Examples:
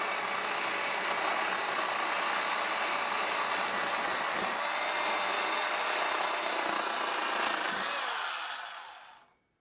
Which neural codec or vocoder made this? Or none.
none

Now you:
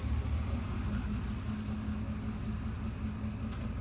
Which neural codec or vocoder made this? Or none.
none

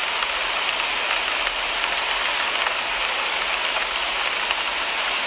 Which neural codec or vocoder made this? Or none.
none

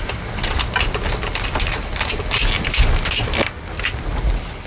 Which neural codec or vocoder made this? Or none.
none